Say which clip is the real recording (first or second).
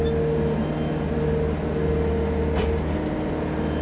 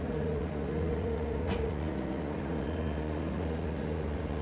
first